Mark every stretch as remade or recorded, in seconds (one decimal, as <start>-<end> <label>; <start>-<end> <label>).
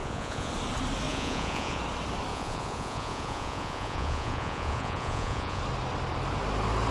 0.0-0.5 remade; 0.5-1.1 recorded; 1.1-1.8 remade; 1.8-2.3 recorded; 2.3-5.6 remade; 5.6-6.9 recorded